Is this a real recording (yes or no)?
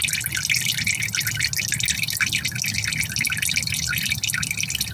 yes